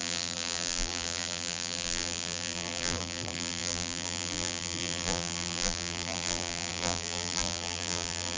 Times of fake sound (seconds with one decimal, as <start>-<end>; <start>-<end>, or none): 0.0-8.4